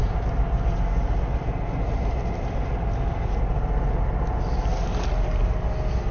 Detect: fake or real real